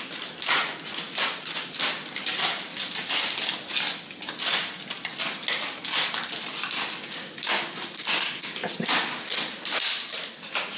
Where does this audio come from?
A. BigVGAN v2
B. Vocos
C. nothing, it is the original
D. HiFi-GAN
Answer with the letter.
C